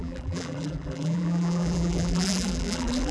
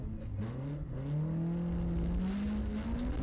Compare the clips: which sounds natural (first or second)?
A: second